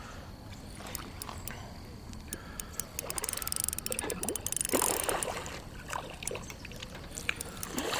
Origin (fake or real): real